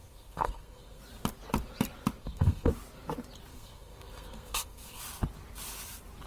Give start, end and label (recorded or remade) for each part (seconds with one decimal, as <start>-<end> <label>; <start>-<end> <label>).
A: 0.0-1.0 remade; 1.0-2.2 recorded; 2.2-2.7 remade; 2.7-3.5 recorded; 3.5-5.0 remade; 5.0-6.3 recorded